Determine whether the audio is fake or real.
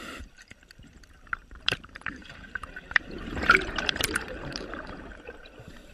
fake